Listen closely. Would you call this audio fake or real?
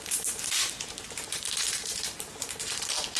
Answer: fake